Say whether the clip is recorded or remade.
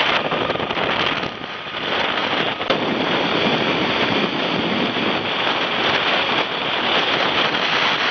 remade